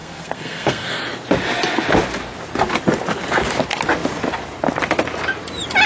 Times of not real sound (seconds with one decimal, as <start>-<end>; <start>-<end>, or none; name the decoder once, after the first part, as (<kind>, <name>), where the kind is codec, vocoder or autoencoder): 0.0-1.0 (codec, SNAC)